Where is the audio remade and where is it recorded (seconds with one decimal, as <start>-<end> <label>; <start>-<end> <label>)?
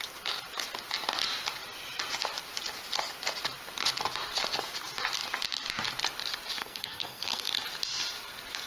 0.0-6.6 recorded; 6.6-7.5 remade; 7.5-8.7 recorded